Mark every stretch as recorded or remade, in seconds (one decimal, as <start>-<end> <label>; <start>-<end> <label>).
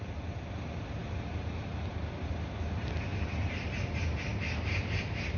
0.0-5.4 recorded